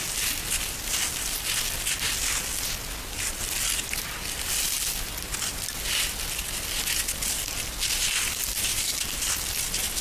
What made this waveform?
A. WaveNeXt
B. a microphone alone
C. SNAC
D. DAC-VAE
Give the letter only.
B